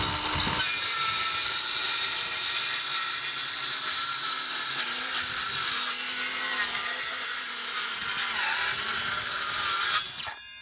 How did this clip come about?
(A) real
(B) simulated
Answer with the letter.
A